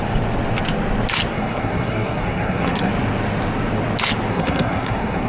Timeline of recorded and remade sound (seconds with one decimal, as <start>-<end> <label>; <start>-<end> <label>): 0.0-1.3 recorded; 1.3-2.9 remade; 2.9-4.3 recorded; 4.3-5.3 remade